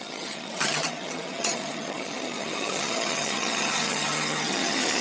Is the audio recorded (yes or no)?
no